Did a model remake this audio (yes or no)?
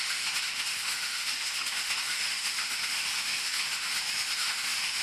yes